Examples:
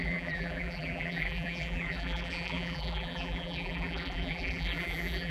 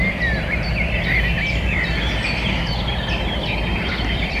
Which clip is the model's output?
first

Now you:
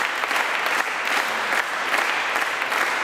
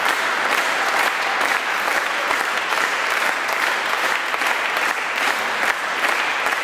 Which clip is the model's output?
second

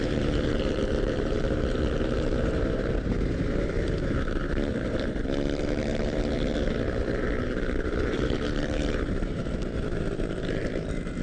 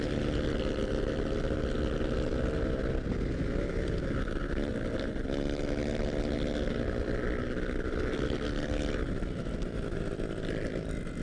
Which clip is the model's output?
first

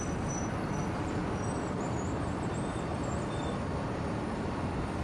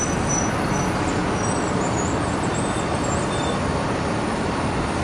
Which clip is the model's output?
first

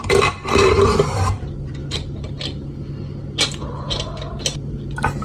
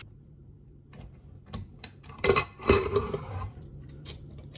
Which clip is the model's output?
second